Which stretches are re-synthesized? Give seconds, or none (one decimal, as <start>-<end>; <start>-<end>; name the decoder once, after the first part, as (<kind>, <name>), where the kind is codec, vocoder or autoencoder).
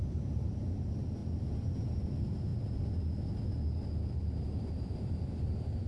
0.0-1.2 (vocoder, BigVGAN v2); 2.1-2.5; 4.4-5.9